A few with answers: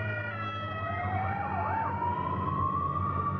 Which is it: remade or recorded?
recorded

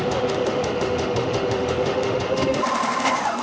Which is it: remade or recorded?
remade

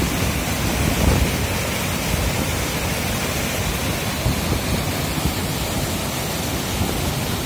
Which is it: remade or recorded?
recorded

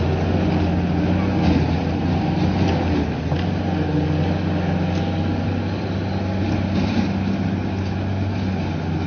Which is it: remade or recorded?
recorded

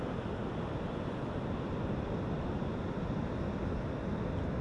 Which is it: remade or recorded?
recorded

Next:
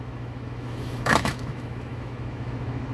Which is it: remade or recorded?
remade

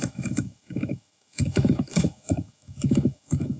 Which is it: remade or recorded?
remade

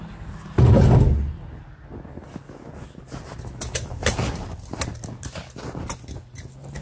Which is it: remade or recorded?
recorded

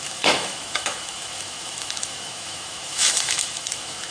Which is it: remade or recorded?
remade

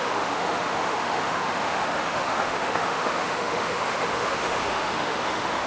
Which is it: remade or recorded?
remade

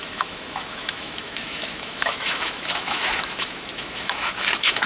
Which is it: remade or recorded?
remade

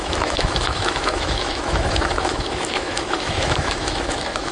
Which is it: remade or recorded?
remade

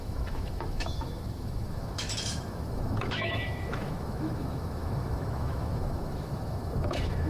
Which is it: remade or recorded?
remade